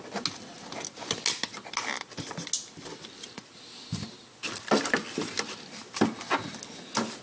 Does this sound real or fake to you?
real